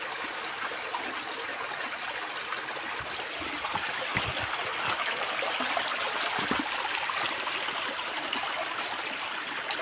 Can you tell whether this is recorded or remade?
recorded